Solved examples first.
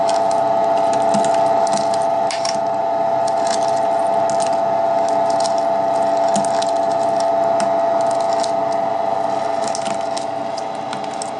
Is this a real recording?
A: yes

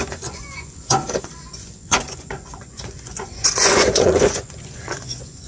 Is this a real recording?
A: no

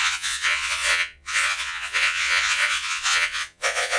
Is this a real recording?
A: no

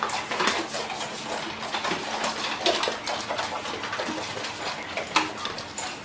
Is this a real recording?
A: yes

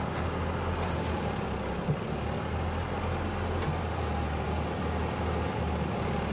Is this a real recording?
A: yes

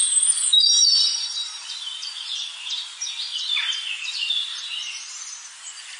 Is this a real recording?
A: no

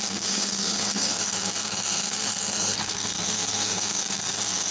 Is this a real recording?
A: no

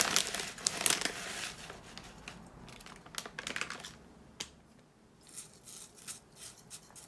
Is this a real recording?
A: yes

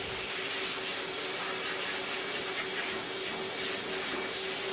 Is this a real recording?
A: yes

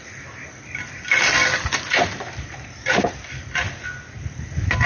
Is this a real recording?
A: yes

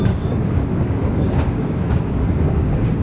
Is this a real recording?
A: no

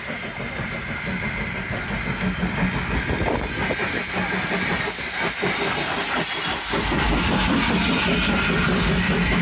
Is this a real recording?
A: yes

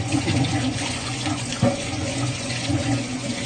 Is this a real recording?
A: no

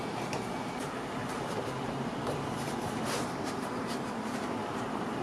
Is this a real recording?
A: no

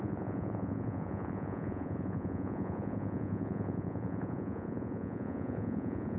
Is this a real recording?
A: no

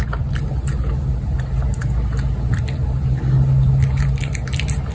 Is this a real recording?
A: yes